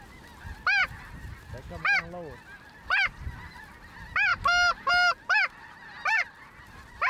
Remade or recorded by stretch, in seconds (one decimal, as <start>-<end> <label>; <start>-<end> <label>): 0.0-7.1 recorded